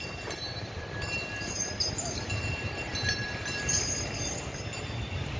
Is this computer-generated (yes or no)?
no